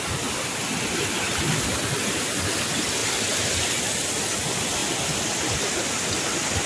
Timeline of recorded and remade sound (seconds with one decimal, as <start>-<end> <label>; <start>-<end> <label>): 0.0-6.7 recorded